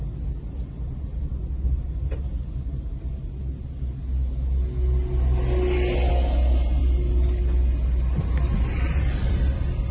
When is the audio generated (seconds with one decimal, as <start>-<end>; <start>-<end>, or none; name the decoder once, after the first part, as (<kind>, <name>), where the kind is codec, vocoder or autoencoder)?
none